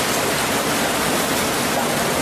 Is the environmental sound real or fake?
real